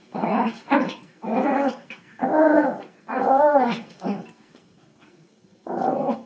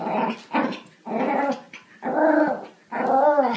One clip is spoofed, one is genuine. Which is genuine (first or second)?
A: second